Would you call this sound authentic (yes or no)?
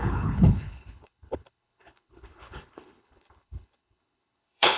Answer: no